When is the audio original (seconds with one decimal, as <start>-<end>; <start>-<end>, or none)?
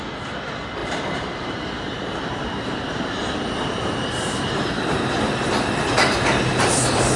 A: 0.0-0.8; 5.1-6.5